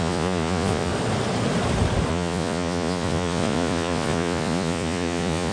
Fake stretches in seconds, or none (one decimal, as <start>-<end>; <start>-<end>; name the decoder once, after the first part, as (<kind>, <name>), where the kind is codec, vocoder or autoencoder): 0.0-0.9 (vocoder, Vocos); 2.1-5.5